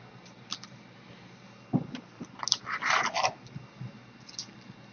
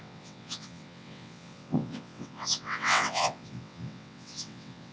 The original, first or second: first